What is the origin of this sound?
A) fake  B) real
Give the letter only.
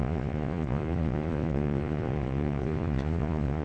A